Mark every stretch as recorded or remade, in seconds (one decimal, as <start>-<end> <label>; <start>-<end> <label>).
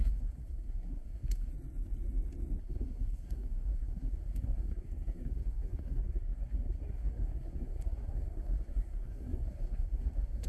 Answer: 0.0-1.5 remade; 1.5-2.6 recorded; 2.6-10.5 remade